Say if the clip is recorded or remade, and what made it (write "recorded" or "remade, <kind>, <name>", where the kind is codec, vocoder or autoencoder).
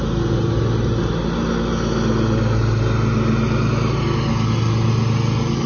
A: recorded